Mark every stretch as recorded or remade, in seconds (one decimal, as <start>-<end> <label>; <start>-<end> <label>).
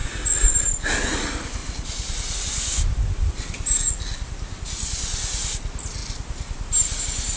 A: 0.0-7.4 recorded